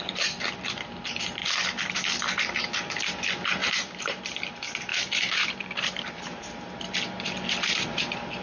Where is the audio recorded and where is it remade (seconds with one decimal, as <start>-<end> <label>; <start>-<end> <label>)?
0.0-3.6 recorded; 3.6-4.2 remade; 4.2-4.9 recorded; 4.9-6.8 remade; 6.8-8.4 recorded